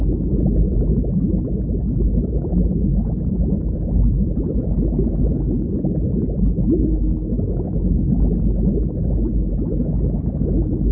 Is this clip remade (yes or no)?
yes